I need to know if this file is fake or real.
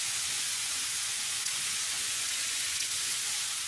fake